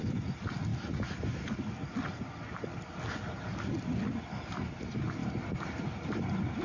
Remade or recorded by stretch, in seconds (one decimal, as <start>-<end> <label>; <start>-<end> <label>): 0.0-5.2 recorded; 5.2-5.8 remade; 5.8-6.6 recorded